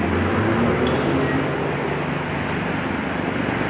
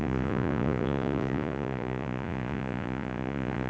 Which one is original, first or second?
first